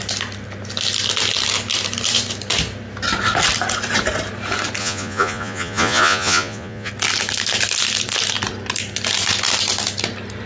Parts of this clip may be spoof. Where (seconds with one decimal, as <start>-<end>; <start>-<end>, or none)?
4.8-6.9